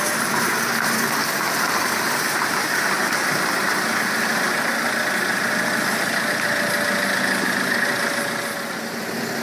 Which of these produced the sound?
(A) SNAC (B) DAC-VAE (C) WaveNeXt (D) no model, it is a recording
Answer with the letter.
D